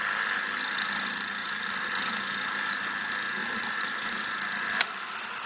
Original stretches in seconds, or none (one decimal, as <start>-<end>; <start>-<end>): 0.0-1.4; 2.1-3.4; 4.2-5.5